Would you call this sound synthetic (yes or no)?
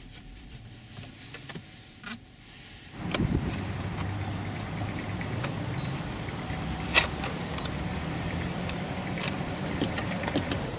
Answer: yes